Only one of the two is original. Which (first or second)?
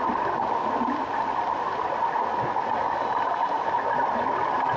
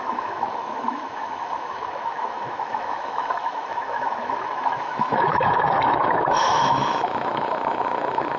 first